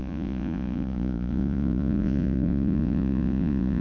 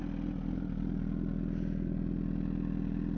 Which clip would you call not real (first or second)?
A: first